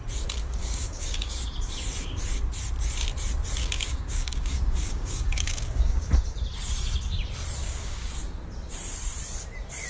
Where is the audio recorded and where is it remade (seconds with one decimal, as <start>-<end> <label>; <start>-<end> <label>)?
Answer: 0.0-0.6 recorded; 0.6-1.3 remade; 1.3-3.6 recorded; 3.6-6.1 remade; 6.1-7.6 recorded; 7.6-8.1 remade; 8.1-9.9 recorded